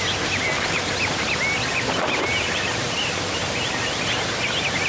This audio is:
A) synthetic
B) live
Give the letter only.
B